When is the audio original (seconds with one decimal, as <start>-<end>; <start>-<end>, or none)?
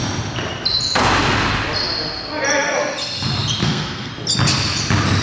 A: 0.0-3.6; 4.1-5.2